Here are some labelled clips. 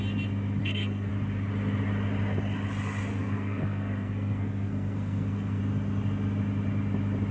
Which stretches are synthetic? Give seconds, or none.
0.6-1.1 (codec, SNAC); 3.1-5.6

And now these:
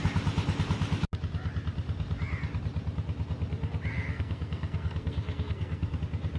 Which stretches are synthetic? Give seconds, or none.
3.9-6.0 (codec, SNAC)

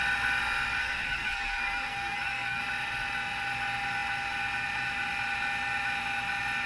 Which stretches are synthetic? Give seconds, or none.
0.8-2.6 (codec, SNAC)

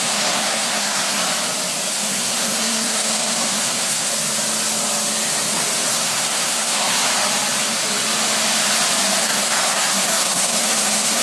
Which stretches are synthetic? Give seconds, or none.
0.0-1.2 (codec, SNAC); 1.9-4.1; 5.9-7.0; 9.2-11.2

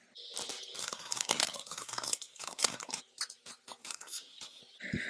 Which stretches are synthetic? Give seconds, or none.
0.8-3.0 (codec, SNAC); 3.8-4.6

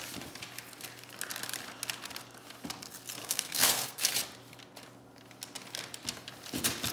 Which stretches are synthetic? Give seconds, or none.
3.2-4.1 (codec, SNAC)

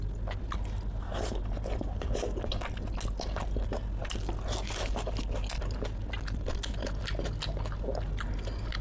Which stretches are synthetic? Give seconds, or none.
none